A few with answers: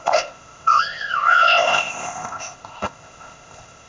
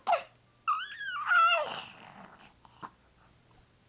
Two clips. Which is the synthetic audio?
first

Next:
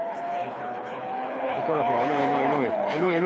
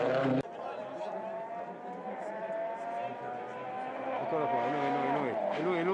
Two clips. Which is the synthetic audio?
first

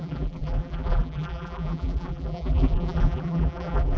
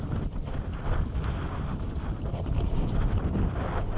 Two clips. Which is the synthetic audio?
first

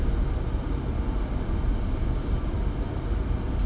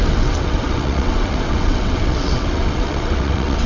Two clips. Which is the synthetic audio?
second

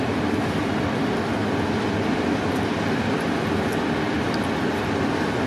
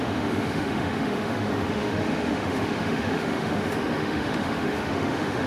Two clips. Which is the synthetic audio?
second